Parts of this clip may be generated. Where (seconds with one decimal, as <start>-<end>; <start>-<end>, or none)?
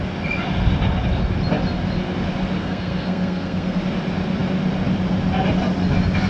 2.6-3.8